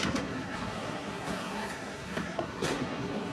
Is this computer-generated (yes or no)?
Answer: yes